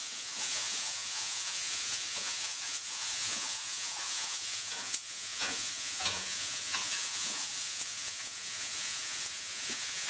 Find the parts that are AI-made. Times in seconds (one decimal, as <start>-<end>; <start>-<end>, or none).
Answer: 0.0-10.1